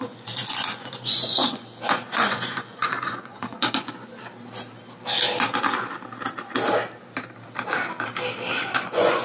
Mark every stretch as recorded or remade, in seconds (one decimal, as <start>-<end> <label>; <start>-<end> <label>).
0.0-4.1 remade; 4.1-8.5 recorded; 8.5-9.2 remade